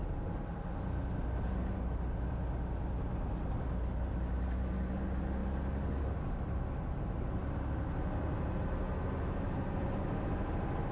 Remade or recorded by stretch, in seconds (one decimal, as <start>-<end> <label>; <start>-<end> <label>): 0.0-10.9 recorded